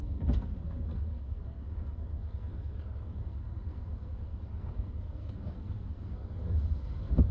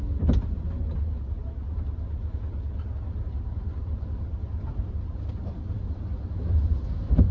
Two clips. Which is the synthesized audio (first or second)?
first